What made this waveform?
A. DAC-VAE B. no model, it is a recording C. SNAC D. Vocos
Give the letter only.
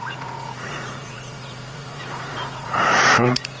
D